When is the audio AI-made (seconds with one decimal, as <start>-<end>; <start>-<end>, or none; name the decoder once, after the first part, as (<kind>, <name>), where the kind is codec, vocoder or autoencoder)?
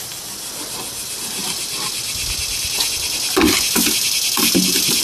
none